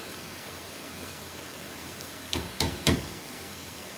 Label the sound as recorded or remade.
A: remade